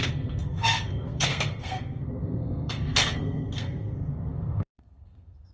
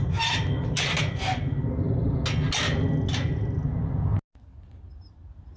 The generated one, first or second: first